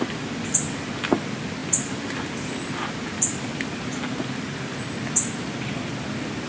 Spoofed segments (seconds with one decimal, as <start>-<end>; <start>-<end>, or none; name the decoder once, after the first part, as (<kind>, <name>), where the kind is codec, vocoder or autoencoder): none

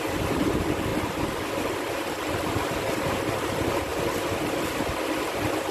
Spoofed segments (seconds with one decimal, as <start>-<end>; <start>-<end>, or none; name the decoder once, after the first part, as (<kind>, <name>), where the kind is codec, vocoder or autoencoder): none

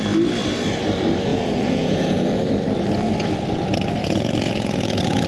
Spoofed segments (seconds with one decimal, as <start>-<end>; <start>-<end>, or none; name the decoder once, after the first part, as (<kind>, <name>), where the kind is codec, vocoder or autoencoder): 1.3-2.5 (vocoder, Vocos); 4.0-5.3